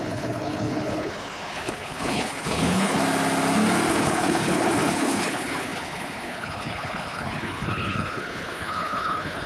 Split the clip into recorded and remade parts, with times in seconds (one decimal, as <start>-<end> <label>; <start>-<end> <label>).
0.0-3.0 remade; 3.0-3.9 recorded; 3.9-9.5 remade